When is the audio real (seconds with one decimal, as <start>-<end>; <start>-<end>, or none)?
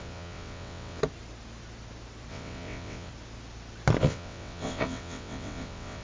1.0-2.3; 3.1-4.0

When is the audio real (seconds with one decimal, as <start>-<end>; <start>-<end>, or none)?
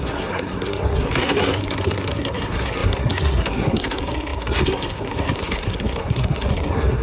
none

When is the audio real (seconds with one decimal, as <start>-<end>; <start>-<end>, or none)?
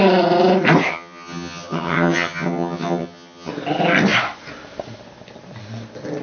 0.0-0.9; 3.5-6.2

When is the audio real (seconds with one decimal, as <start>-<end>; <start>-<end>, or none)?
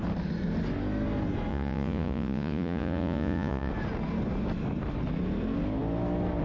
0.0-1.5; 3.7-6.4